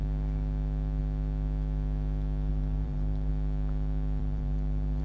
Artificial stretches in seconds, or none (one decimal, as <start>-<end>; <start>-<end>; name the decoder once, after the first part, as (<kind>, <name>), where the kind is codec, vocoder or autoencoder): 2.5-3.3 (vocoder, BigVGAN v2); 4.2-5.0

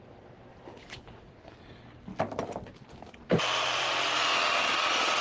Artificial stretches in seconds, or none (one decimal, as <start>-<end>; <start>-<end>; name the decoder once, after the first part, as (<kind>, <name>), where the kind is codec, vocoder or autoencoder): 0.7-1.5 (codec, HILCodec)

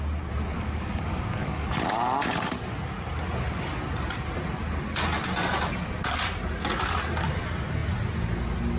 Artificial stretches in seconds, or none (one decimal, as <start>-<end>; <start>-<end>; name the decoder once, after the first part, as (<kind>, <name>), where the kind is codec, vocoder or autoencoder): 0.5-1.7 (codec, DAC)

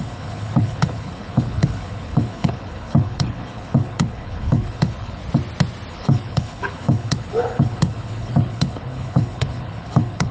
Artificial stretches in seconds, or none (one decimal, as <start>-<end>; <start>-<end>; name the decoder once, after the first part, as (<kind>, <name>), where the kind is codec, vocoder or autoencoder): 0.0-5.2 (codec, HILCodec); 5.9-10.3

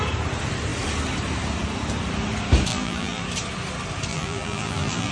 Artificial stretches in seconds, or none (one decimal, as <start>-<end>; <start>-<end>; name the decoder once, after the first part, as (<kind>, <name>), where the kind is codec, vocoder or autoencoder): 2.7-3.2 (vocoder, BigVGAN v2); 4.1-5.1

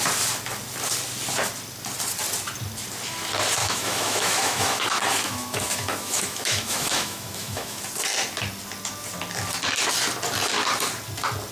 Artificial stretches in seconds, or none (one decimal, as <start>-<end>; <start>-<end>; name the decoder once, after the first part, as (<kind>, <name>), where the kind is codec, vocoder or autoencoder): 3.6-7.8 (autoencoder, DAC-VAE)